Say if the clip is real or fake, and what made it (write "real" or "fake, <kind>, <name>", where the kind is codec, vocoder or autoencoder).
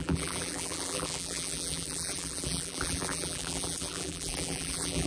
fake, vocoder, BigVGAN v2